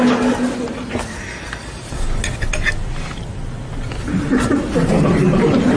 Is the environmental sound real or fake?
real